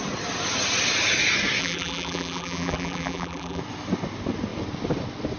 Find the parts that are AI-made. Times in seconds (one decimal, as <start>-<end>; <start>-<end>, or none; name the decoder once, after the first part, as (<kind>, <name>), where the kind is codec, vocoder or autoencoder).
1.6-3.6 (vocoder, BigVGAN v2)